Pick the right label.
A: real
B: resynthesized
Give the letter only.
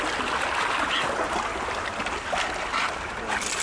A